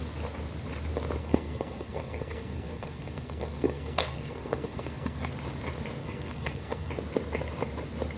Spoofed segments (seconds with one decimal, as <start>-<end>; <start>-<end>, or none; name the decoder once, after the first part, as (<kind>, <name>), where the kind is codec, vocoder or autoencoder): 1.2-5.3 (codec, SNAC); 6.0-6.9